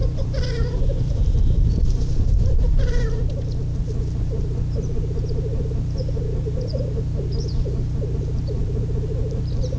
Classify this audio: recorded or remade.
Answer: remade